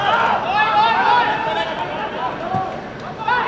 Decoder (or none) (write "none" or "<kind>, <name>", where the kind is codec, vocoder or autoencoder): none